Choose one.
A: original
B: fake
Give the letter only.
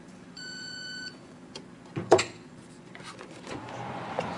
B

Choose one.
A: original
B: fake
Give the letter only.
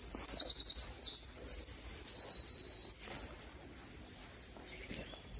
A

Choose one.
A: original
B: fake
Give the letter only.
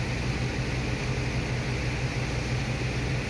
A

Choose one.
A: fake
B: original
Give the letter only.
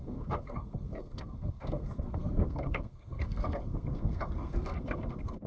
A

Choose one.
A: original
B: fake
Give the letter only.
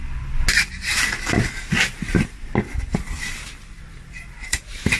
A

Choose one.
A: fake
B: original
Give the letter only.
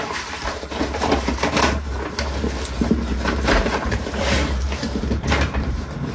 A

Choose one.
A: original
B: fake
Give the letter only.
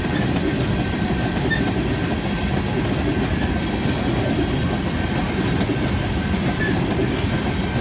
A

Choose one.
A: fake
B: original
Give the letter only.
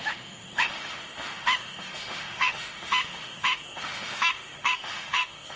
A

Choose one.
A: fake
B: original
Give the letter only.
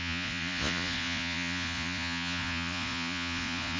A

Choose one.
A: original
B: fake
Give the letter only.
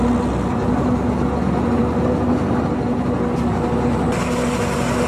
A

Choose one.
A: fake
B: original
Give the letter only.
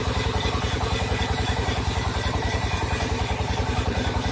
A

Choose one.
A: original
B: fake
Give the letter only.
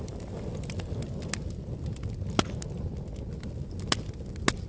A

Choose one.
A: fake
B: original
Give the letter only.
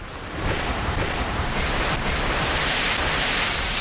B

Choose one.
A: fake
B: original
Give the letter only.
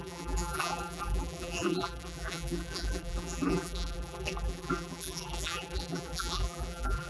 A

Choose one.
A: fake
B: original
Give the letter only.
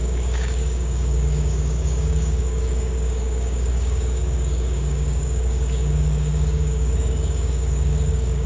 A